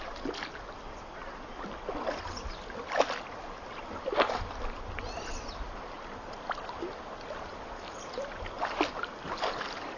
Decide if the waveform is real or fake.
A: real